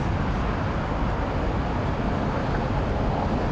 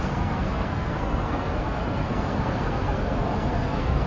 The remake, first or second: second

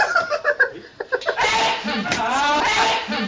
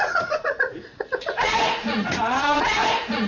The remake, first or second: second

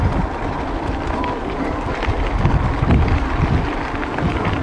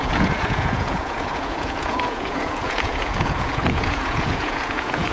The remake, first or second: second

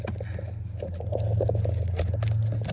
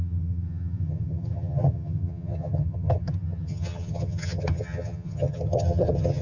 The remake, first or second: second